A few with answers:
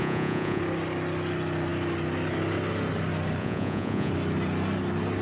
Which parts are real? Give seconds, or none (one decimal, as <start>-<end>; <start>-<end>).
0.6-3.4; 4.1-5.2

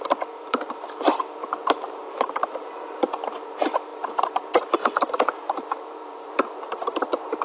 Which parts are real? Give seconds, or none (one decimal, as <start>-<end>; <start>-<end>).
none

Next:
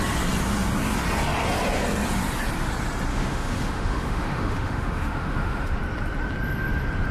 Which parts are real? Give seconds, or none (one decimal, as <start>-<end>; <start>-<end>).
0.0-3.1; 5.8-7.1